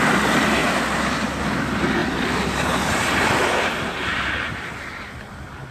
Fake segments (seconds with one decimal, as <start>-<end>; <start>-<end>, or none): 0.6-1.4; 2.0-5.7